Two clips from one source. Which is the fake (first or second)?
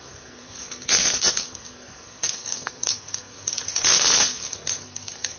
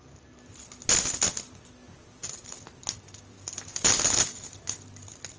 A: first